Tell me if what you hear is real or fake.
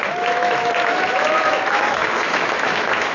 fake